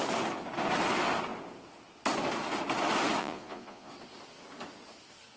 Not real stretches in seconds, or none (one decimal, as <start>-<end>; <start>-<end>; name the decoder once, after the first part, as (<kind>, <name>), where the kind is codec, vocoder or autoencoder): 3.2-3.9 (vocoder, Vocos)